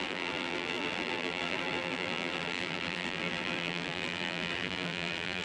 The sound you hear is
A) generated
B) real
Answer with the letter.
A